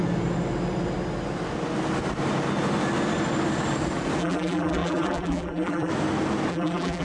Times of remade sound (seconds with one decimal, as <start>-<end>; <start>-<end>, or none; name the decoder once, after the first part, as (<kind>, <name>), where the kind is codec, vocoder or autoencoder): 4.2-5.9 (vocoder, BigVGAN v2); 6.5-7.0